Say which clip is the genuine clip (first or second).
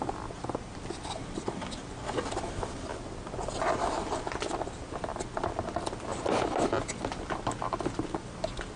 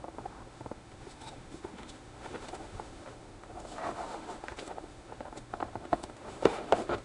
first